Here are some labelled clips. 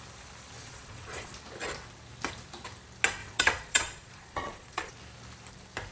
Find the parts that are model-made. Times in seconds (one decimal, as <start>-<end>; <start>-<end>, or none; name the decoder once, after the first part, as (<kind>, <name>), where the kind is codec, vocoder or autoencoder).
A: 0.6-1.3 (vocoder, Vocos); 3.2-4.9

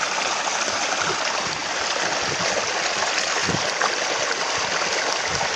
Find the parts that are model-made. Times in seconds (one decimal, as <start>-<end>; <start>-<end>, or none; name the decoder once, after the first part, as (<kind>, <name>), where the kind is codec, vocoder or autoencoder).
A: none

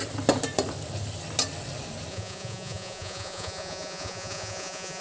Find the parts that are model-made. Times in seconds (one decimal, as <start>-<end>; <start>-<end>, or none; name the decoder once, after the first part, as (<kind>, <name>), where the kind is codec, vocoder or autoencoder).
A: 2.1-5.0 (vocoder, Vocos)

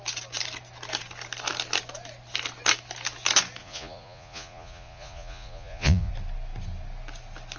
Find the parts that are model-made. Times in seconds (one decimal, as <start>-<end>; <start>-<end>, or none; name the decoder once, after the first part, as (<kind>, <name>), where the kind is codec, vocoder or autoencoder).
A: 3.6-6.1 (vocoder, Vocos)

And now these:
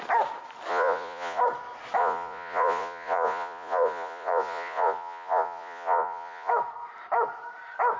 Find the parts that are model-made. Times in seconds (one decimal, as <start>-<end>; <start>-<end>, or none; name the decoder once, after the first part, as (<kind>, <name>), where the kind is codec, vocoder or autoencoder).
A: 0.7-1.4 (vocoder, Vocos); 2.0-6.5